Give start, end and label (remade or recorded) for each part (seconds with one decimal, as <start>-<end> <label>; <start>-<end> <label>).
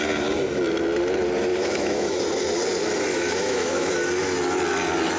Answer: 0.0-1.5 recorded; 1.5-2.2 remade; 2.2-3.1 recorded; 3.1-3.9 remade; 3.9-5.2 recorded